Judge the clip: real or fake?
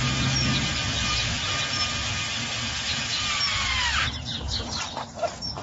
real